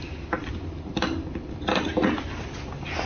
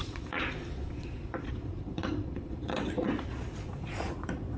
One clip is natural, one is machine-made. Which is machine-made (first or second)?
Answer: second